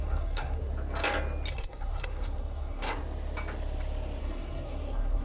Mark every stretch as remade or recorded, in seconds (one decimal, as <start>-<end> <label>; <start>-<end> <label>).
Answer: 0.0-0.7 remade; 0.7-1.5 recorded; 1.5-3.0 remade; 3.0-4.2 recorded; 4.2-5.2 remade

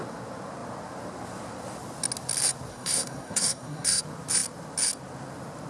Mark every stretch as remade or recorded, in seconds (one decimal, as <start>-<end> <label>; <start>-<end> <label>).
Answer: 0.0-2.7 recorded; 2.7-4.0 remade; 4.0-5.7 recorded

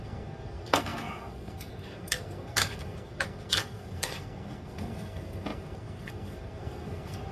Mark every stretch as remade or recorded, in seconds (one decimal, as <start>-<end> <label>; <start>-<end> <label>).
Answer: 0.0-7.3 remade

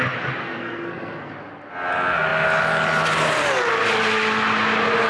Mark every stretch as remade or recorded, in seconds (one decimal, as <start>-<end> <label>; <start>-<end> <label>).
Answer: 0.0-0.4 recorded; 0.4-1.3 remade; 1.3-5.1 recorded

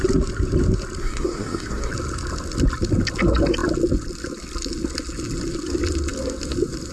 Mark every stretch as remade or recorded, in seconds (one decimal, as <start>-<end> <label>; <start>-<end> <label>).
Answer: 0.0-1.0 recorded; 1.0-1.9 remade; 1.9-6.9 recorded

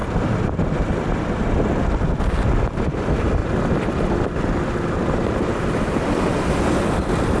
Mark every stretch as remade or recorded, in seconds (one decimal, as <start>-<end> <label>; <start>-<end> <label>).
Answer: 0.0-7.4 recorded

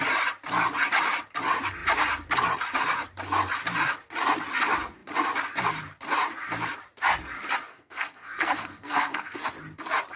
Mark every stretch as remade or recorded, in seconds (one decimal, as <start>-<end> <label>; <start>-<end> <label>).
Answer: 0.0-7.7 recorded; 7.7-9.4 remade; 9.4-10.2 recorded